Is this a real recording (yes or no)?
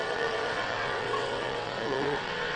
no